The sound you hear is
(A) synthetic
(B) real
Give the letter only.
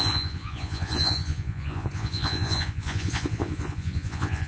A